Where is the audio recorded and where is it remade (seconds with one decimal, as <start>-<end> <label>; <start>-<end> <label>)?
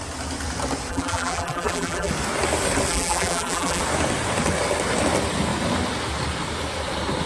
0.0-0.9 recorded; 0.9-2.1 remade; 2.1-2.9 recorded; 2.9-3.8 remade; 3.8-7.3 recorded